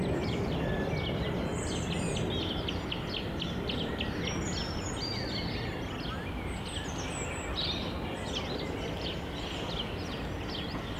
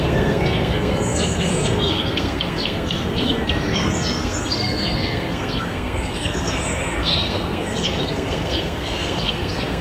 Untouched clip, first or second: first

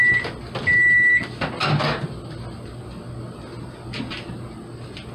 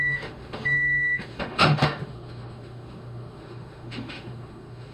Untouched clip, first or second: first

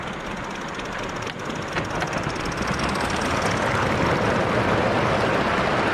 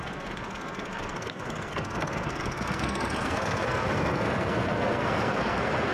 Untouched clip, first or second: first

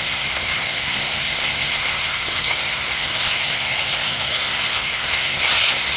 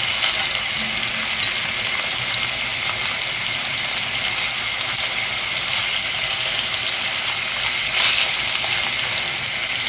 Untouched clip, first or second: second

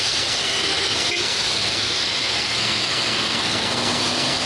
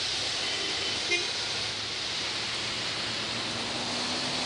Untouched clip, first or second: second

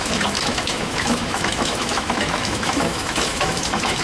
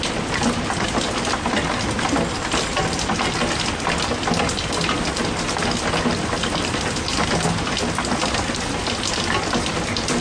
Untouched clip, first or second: second